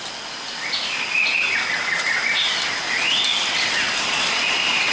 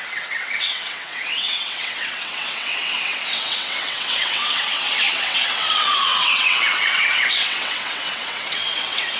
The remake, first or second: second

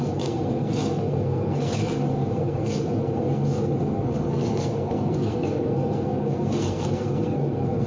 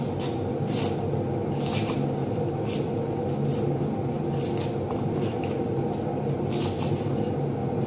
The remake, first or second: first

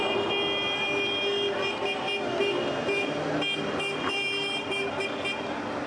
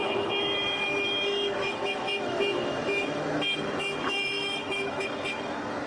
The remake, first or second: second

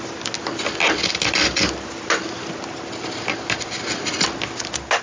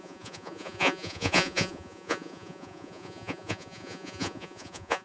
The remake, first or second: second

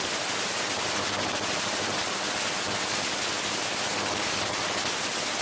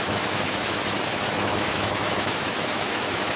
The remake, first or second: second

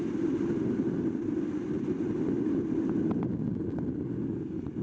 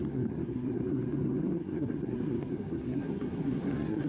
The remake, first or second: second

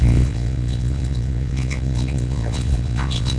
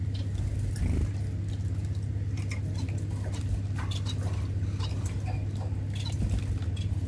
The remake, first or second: first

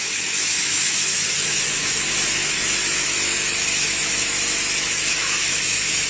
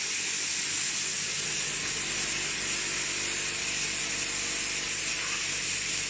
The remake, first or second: first